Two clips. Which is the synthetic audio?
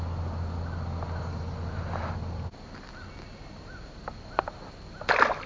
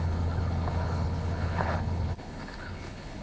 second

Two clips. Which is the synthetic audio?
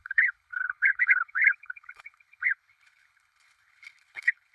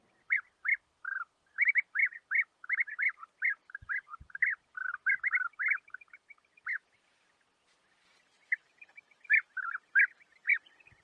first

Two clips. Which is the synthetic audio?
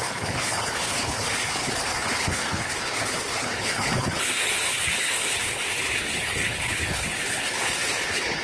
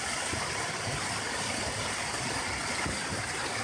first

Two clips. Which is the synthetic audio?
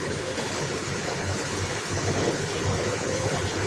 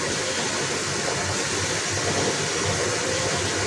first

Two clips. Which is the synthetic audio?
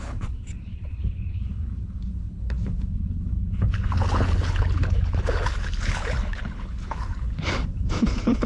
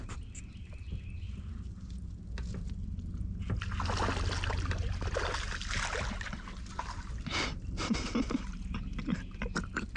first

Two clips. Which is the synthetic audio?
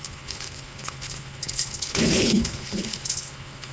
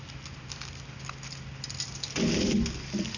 first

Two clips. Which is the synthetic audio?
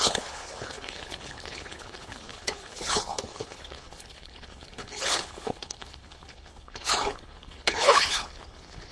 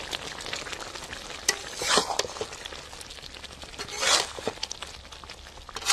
first